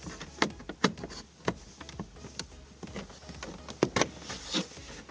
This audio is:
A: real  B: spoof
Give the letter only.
A